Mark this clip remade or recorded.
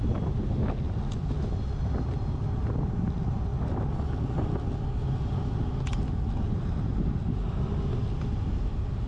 recorded